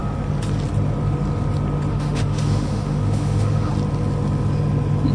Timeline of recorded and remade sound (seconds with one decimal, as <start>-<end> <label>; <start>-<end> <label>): 0.0-1.9 recorded; 1.9-3.7 remade; 3.7-5.1 recorded